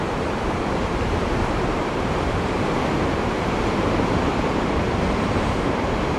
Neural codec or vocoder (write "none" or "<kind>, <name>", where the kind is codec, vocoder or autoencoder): vocoder, BigVGAN v2